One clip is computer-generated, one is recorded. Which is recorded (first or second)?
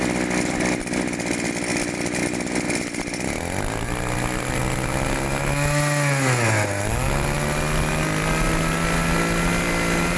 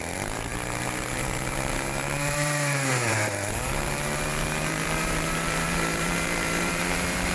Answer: first